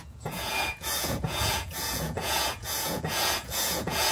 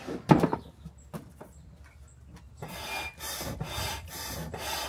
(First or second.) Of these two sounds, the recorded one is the second